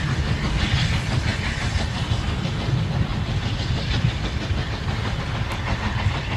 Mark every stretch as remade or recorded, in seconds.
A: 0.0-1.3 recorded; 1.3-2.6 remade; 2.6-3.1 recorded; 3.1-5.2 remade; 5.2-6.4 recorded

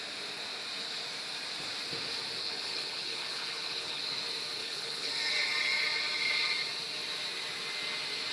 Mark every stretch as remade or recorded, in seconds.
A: 0.0-2.4 recorded; 2.4-4.0 remade; 4.0-4.6 recorded; 4.6-5.1 remade; 5.1-8.3 recorded

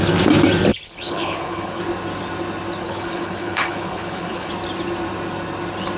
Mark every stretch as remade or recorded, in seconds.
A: 0.0-0.7 recorded; 0.7-1.8 remade; 1.8-2.8 recorded; 2.8-4.5 remade; 4.5-6.0 recorded